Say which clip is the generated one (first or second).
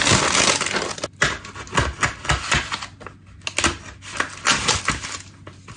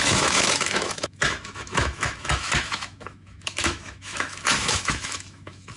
second